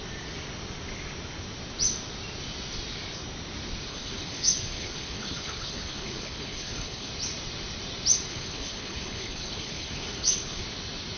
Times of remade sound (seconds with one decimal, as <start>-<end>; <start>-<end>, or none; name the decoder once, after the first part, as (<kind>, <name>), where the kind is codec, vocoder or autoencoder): 3.9-7.1 (codec, HILCodec); 8.3-10.6